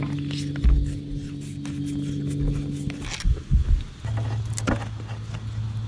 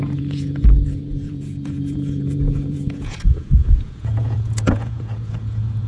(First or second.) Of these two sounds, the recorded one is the first